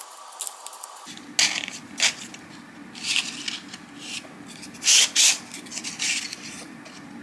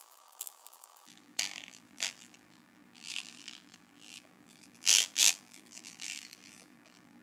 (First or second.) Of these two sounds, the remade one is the second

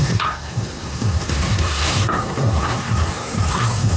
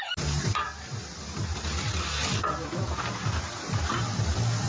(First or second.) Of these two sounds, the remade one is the first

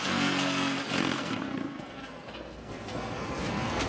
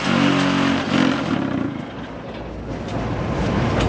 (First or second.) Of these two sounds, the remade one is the first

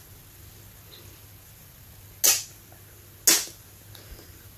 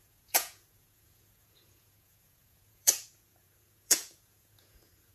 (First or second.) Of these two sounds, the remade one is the second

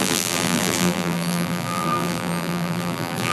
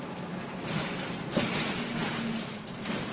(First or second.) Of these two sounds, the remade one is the first